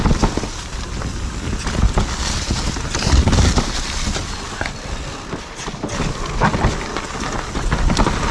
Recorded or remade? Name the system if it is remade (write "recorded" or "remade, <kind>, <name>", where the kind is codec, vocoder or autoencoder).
recorded